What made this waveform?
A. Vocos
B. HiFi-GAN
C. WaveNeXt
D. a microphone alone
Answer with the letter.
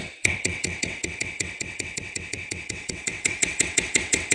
C